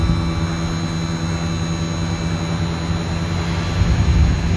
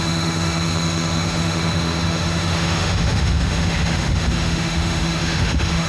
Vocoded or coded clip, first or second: second